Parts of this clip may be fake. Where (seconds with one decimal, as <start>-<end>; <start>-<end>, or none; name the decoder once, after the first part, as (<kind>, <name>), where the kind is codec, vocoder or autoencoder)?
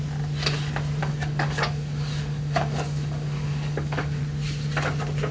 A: 1.0-4.2 (codec, DAC)